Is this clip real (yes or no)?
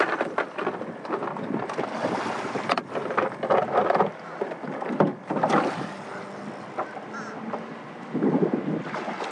yes